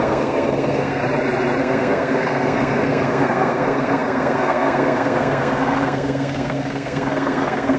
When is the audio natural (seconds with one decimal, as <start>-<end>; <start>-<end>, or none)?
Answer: 1.0-1.6